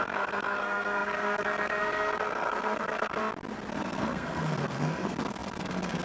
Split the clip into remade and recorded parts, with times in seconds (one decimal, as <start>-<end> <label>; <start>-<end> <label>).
0.0-3.2 remade; 3.2-3.7 recorded; 3.7-6.0 remade